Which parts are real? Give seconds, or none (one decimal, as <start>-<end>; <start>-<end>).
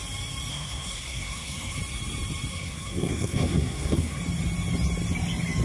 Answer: 0.0-0.5; 1.8-2.5; 4.2-5.6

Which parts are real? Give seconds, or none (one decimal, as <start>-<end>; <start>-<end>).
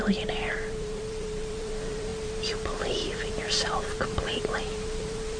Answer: 0.0-0.5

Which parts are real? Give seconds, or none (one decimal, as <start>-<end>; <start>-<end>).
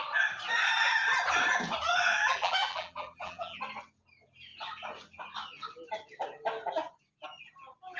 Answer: 0.0-2.2; 3.6-8.0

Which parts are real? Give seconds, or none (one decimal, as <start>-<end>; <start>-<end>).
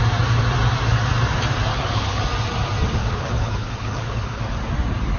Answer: 0.0-1.7; 2.2-3.0; 4.4-5.2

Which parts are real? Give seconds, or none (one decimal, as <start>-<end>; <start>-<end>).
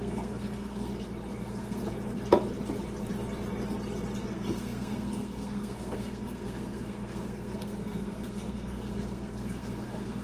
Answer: 0.9-1.4; 1.8-4.3